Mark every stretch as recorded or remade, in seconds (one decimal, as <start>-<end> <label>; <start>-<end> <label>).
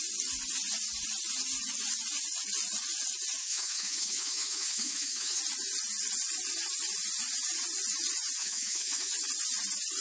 0.0-3.4 recorded; 3.4-5.4 remade; 5.4-8.4 recorded; 8.4-9.1 remade; 9.1-10.0 recorded